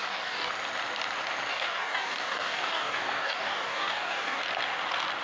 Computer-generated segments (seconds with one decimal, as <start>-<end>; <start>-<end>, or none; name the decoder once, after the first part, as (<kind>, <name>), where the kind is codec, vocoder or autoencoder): 0.0-0.5 (codec, DAC); 1.5-4.4